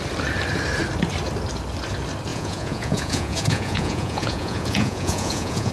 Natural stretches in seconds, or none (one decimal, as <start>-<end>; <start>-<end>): 0.0-2.3